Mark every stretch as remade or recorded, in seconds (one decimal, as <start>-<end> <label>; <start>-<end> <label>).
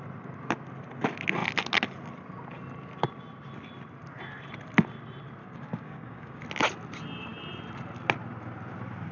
0.0-5.4 recorded; 5.4-6.4 remade; 6.4-9.1 recorded